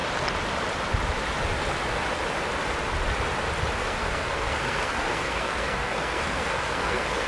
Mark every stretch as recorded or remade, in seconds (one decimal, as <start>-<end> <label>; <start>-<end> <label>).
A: 0.0-3.8 recorded; 3.8-7.3 remade